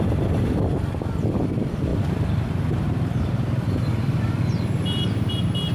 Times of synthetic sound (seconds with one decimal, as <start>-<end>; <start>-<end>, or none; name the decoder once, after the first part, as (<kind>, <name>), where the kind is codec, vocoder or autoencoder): 1.9-5.3 (vocoder, BigVGAN v2)

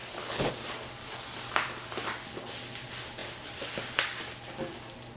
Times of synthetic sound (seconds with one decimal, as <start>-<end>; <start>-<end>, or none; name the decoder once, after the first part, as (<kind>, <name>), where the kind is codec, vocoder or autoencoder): 0.0-0.5 (codec, HILCodec)

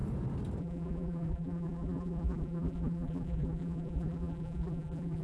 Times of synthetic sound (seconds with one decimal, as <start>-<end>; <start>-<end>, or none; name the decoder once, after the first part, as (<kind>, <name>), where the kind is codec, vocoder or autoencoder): 0.6-5.2 (vocoder, BigVGAN v2)

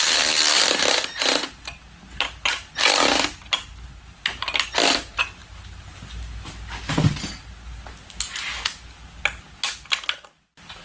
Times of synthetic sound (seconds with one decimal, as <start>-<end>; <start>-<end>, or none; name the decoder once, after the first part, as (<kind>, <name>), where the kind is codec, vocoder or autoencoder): none